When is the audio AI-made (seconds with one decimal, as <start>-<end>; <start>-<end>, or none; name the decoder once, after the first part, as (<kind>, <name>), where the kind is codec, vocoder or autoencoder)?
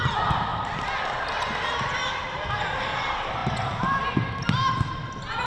0.5-1.0 (vocoder, BigVGAN v2)